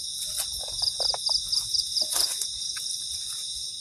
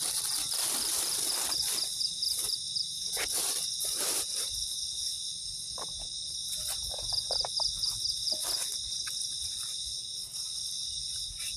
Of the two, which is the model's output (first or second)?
second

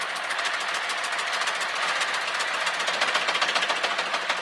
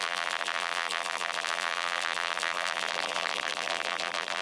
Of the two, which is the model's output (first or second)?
second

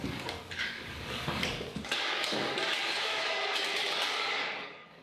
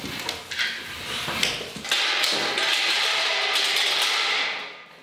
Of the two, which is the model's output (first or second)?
first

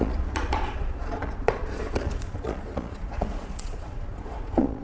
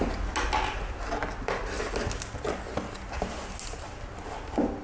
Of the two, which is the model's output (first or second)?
first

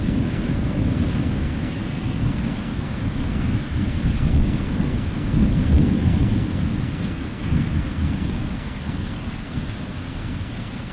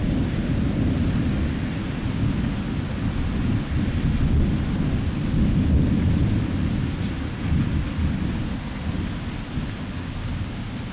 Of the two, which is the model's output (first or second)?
first